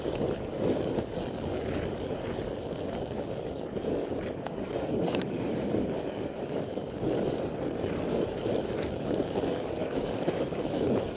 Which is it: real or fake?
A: fake